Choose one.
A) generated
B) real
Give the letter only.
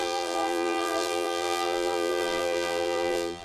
A